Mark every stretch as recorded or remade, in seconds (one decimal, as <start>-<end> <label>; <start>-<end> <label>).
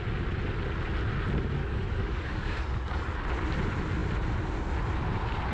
0.0-1.6 recorded; 1.6-3.2 remade; 3.2-5.5 recorded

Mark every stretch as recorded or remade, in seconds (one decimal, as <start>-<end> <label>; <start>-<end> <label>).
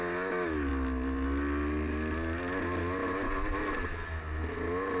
0.0-5.0 recorded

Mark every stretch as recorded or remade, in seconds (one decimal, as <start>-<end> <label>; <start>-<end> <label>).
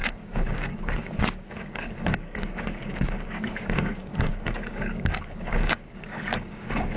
0.0-7.0 remade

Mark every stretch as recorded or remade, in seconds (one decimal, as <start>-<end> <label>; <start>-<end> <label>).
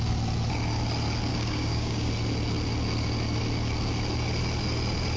0.0-1.3 recorded; 1.3-2.1 remade; 2.1-5.2 recorded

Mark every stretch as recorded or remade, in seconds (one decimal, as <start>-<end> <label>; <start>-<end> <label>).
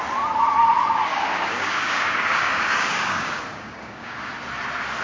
0.0-1.3 recorded; 1.3-4.3 remade; 4.3-5.0 recorded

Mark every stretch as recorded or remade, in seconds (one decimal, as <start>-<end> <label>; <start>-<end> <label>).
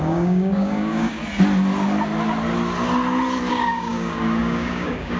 0.0-1.2 remade; 1.2-3.5 recorded; 3.5-5.2 remade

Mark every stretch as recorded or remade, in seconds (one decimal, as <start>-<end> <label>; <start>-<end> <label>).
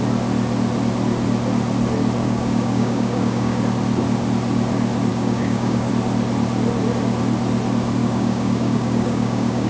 0.0-2.2 recorded; 2.2-3.6 remade; 3.6-5.1 recorded; 5.1-5.9 remade; 5.9-8.0 recorded; 8.0-9.7 remade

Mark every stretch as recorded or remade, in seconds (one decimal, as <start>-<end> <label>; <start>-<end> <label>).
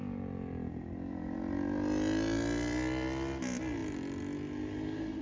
0.0-5.2 recorded